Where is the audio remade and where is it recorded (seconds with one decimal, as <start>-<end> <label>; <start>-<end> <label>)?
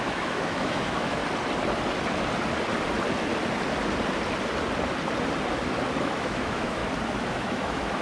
0.0-1.2 remade; 1.2-6.0 recorded; 6.0-6.8 remade; 6.8-7.3 recorded; 7.3-8.0 remade